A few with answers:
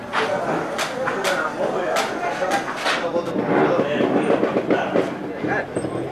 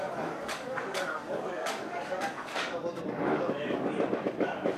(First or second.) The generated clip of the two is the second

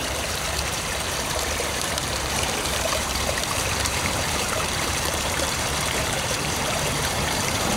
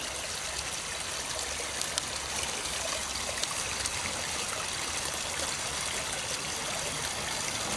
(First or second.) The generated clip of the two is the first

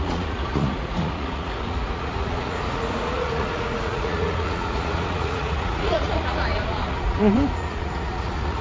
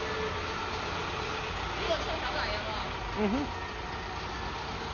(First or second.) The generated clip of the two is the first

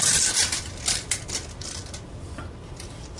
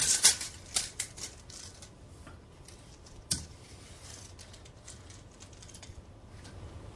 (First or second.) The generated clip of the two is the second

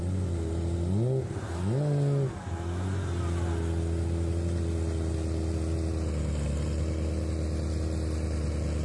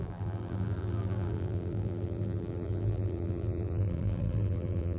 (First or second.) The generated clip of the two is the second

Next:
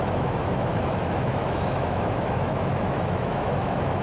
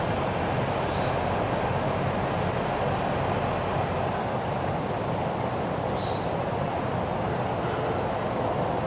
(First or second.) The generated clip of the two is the first